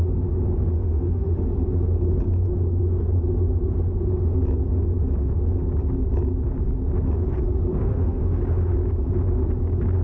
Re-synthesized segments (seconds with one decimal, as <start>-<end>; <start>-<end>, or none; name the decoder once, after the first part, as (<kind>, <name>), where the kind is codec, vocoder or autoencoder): 0.8-1.4 (autoencoder, DAC-VAE); 7.7-8.4